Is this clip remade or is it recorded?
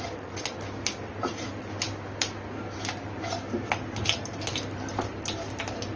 recorded